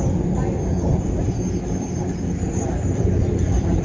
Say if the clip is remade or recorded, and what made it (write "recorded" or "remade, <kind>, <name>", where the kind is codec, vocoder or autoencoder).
recorded